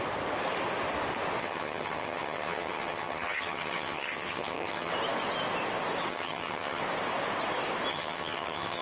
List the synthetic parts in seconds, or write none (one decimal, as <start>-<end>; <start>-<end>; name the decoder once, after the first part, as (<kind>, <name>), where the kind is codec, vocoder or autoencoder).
1.4-4.9 (vocoder, HiFi-GAN); 6.1-6.8; 7.9-8.8